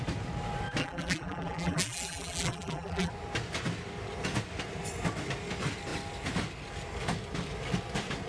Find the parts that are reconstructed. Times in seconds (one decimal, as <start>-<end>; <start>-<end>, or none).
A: 0.8-3.1